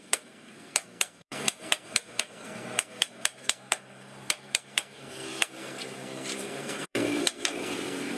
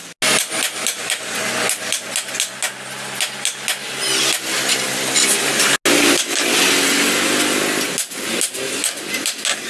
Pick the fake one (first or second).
first